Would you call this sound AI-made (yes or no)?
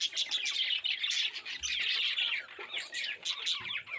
no